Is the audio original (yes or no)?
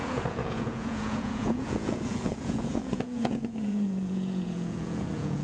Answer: no